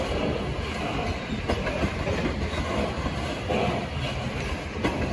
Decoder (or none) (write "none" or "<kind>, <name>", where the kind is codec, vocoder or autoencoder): none